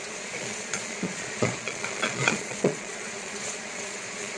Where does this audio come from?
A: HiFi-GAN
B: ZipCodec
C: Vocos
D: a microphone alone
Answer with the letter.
C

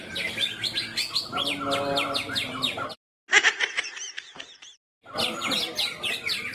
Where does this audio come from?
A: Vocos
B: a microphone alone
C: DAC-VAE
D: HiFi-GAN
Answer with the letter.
B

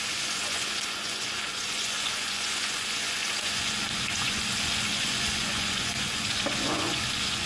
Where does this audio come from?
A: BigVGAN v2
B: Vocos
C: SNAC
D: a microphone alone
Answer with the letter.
B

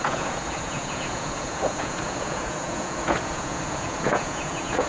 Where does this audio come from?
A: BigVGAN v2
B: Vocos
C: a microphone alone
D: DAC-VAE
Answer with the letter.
B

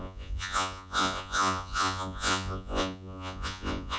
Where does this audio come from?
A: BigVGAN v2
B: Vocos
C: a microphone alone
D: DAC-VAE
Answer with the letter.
B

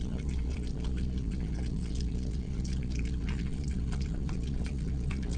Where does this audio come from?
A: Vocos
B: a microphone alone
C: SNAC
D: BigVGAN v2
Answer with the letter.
A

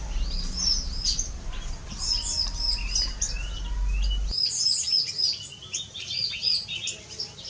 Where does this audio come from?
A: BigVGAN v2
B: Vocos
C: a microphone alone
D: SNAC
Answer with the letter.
C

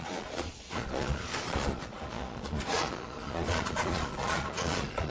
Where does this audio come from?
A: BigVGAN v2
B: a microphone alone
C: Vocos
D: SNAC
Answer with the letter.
C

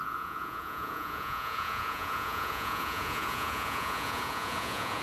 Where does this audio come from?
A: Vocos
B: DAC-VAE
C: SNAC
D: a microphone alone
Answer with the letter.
A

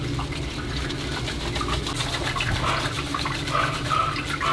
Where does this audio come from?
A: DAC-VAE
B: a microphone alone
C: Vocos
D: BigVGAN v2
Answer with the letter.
B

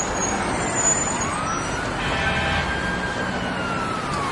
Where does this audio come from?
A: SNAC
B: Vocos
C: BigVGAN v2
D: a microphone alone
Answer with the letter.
D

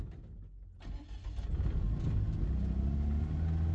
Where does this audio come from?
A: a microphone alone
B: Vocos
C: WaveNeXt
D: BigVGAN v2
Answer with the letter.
A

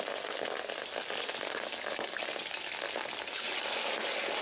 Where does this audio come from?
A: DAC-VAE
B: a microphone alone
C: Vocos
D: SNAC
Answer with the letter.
B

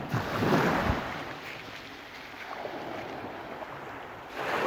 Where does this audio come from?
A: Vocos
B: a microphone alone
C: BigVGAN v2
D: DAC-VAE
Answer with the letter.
B